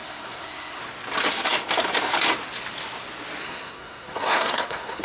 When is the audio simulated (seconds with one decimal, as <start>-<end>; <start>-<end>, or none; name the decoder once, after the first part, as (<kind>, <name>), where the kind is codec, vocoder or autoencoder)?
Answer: 0.0-0.8 (codec, SNAC); 3.4-5.0